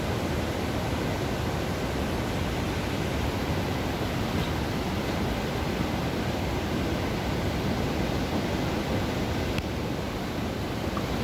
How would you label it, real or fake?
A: real